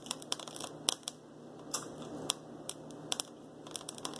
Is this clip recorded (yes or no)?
yes